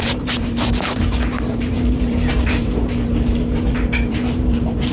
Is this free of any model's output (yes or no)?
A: no